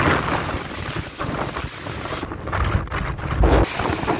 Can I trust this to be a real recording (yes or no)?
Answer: yes